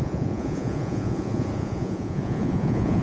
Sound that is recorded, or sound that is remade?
remade